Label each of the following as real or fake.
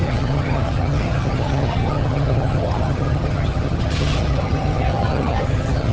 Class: fake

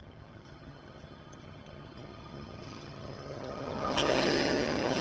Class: fake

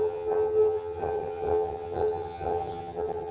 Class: fake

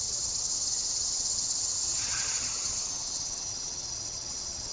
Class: fake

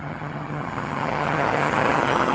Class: fake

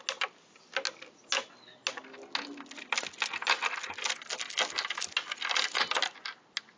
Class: real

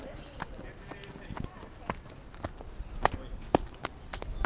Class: real